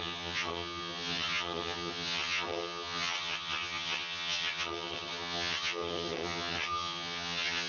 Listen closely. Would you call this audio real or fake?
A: fake